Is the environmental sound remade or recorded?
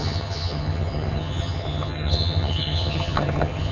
remade